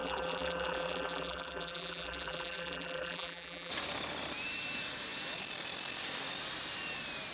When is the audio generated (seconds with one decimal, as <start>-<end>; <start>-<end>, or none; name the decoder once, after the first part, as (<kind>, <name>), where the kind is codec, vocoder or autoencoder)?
0.0-3.7 (vocoder, BigVGAN v2)